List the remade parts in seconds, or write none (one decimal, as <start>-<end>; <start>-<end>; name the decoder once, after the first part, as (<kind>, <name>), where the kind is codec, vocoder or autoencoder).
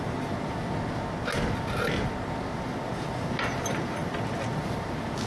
none